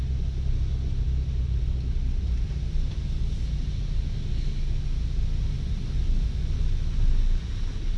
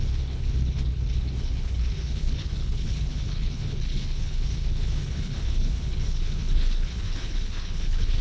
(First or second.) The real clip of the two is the first